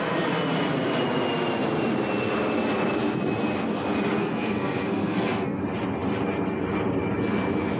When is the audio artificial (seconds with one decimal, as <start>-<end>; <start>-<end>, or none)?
4.2-5.6